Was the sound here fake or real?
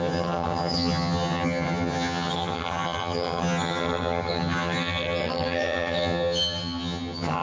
fake